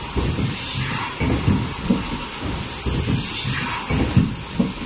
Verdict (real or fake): real